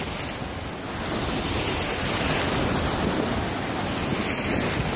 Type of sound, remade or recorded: recorded